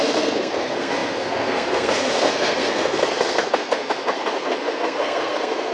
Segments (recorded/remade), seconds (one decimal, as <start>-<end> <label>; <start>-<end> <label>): 0.0-5.7 remade